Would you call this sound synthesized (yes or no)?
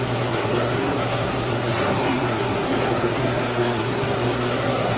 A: yes